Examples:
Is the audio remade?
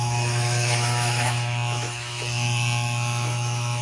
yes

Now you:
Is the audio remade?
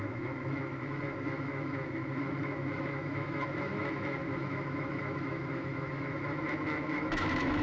yes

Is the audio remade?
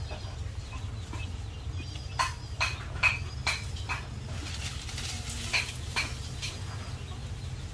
no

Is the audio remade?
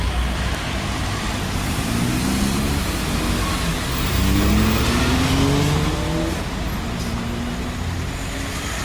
no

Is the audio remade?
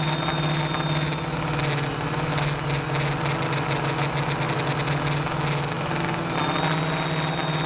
no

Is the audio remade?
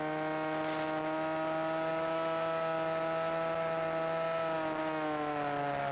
no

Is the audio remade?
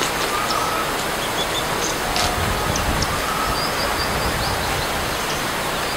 no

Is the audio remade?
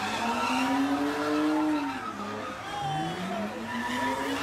no